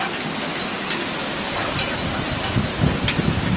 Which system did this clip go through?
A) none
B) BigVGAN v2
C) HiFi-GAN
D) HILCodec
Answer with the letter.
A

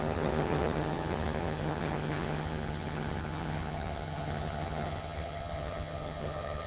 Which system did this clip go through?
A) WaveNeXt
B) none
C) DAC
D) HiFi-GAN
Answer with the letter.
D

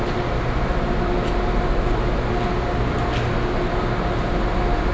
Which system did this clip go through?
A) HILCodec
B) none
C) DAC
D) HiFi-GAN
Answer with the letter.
B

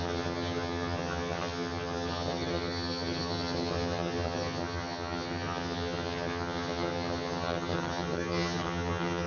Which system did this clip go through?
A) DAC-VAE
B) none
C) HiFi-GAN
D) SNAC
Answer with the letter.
C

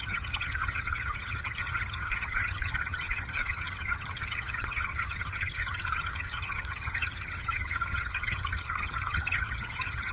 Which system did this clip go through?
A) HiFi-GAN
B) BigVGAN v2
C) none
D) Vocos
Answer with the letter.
A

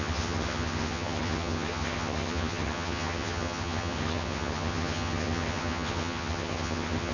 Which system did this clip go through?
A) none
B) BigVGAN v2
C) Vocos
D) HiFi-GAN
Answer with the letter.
D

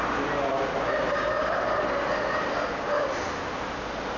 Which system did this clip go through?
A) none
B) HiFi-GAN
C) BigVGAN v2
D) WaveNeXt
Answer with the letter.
A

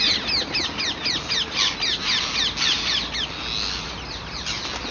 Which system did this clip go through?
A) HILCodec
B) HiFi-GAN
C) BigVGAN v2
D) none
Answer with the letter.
D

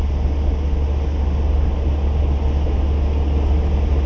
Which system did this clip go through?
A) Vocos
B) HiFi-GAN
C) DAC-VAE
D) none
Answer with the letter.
D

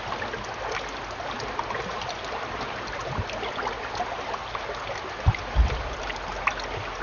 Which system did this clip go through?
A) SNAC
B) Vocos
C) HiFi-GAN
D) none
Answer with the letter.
D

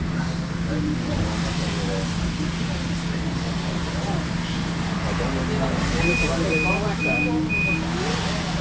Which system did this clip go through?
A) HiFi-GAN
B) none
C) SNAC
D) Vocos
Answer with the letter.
B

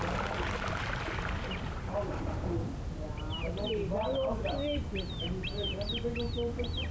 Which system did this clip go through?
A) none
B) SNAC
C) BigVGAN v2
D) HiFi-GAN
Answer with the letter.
A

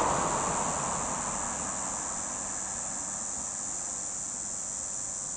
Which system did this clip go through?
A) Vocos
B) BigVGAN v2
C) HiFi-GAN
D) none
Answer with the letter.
D